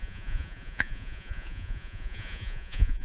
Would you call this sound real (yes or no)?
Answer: no